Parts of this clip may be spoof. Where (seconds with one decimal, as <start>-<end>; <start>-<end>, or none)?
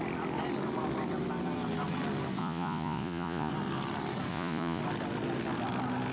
2.4-3.5; 4.3-4.8